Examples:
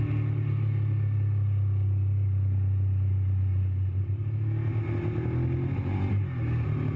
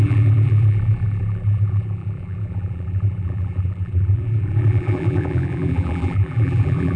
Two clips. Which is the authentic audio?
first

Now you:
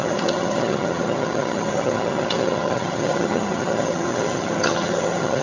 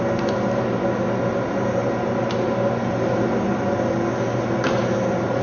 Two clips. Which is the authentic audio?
second